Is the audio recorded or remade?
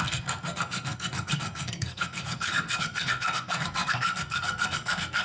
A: remade